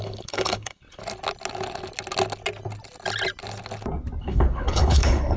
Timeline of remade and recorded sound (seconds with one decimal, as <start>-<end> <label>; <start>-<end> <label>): 0.0-1.0 remade; 1.0-4.2 recorded; 4.2-5.4 remade